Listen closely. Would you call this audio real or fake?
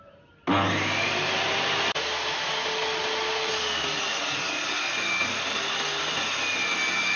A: real